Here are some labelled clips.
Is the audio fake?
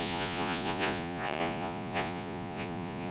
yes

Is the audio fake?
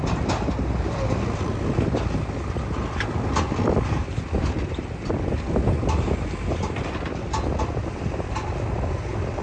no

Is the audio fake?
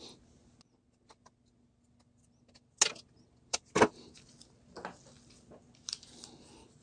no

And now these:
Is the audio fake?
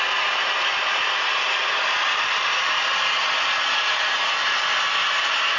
no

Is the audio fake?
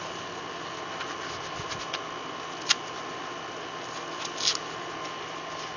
no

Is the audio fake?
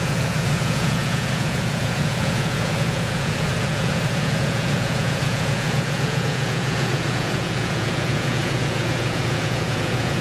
yes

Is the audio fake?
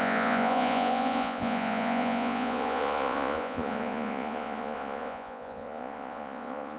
yes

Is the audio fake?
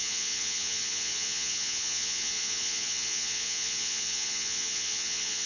yes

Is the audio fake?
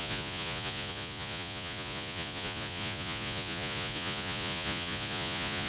yes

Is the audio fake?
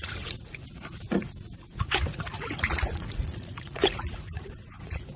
yes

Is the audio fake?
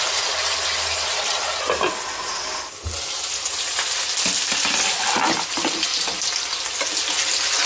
no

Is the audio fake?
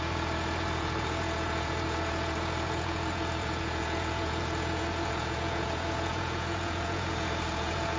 yes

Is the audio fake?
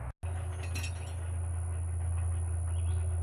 no